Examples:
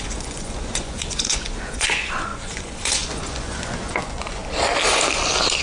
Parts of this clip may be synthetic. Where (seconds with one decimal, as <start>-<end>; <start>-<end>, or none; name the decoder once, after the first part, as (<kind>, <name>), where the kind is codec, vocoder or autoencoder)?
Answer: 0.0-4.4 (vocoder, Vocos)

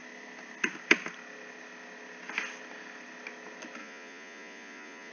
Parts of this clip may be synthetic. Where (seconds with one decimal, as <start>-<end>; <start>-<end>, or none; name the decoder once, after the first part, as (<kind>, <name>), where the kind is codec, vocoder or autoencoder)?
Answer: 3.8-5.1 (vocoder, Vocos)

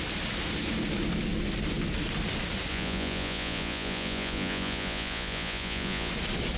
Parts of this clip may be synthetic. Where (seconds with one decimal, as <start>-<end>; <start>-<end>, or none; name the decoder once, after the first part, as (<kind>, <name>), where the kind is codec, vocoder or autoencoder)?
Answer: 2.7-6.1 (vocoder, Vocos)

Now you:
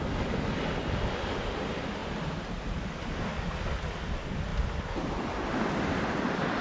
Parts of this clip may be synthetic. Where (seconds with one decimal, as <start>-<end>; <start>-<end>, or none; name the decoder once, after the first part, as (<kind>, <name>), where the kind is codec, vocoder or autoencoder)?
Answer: none

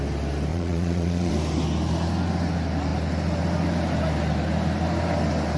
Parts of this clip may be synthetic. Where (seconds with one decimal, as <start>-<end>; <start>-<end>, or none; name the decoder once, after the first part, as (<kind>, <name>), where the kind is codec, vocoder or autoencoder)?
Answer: 0.5-1.3 (vocoder, Vocos)

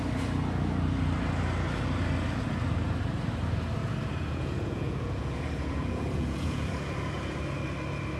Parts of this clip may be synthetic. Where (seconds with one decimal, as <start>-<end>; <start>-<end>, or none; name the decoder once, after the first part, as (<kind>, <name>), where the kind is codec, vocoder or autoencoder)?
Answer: 3.8-7.4 (vocoder, Vocos)

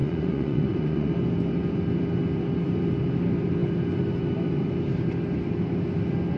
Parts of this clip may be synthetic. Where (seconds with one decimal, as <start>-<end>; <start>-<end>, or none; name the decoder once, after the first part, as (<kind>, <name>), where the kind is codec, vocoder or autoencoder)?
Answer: 0.0-1.1 (vocoder, Vocos)